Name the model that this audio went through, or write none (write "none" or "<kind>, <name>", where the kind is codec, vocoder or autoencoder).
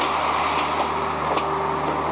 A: none